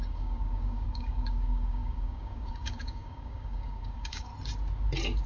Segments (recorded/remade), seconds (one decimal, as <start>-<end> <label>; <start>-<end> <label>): 0.0-4.3 remade; 4.3-5.3 recorded